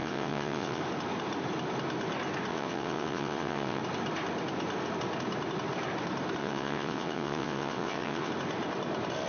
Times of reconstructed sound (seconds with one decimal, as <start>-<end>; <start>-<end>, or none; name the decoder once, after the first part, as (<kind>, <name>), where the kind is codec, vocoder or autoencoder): 0.0-0.8 (vocoder, WaveNeXt); 2.5-3.8; 6.4-8.3